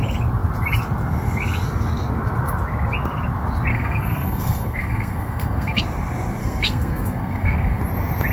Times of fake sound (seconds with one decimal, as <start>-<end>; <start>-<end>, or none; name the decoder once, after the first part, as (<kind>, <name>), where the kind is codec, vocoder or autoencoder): 3.7-5.8 (codec, SNAC); 6.4-7.8